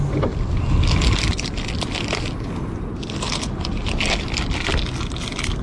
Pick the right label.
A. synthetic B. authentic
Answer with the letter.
B